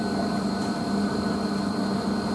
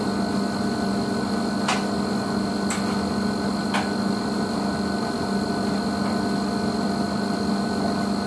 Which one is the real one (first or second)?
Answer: second